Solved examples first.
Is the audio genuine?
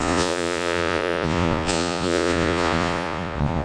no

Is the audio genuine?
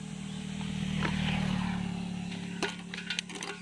yes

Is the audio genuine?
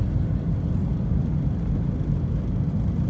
yes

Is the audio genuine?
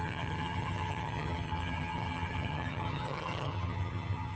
no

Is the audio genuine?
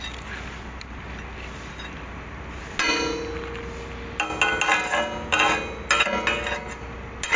yes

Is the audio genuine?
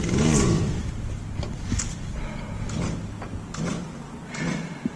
yes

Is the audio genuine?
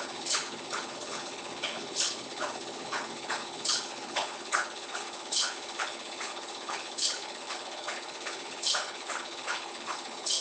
no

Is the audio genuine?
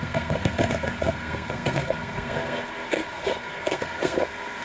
no